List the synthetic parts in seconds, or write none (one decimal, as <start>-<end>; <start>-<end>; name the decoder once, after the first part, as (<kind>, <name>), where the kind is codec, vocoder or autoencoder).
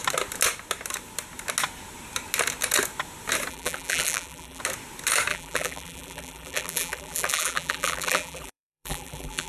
3.5-4.6 (vocoder, BigVGAN v2); 5.3-9.5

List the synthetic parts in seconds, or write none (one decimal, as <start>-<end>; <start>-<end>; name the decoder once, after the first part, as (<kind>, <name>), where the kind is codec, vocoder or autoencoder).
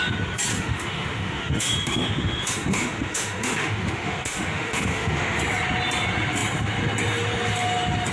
0.5-5.4 (autoencoder, DAC-VAE)